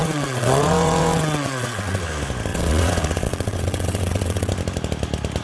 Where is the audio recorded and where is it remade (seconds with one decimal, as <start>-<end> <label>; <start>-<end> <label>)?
0.0-2.0 remade; 2.0-2.5 recorded; 2.5-4.5 remade; 4.5-5.4 recorded